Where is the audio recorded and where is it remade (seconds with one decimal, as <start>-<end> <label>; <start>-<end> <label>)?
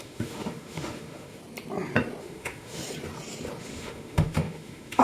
0.0-1.4 remade; 1.4-2.2 recorded; 2.2-2.8 remade; 2.8-3.6 recorded; 3.6-5.0 remade